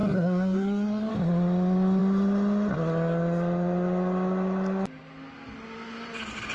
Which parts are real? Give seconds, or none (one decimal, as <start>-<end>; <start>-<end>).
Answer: 1.1-6.5